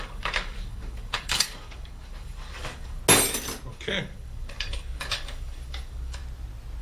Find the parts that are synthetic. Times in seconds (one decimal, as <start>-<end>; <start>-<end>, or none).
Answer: 0.0-3.0; 3.7-6.2